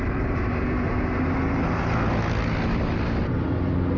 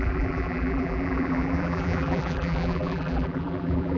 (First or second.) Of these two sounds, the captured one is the first